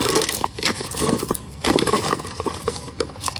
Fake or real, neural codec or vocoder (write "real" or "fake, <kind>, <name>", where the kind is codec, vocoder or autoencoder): fake, codec, SNAC